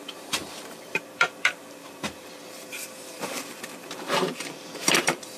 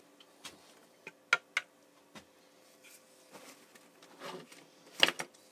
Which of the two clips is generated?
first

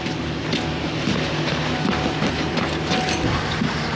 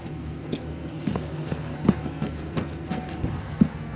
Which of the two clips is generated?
second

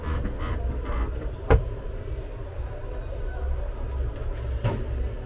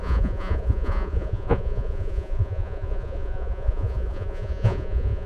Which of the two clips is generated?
second